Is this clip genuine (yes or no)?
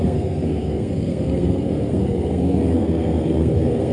no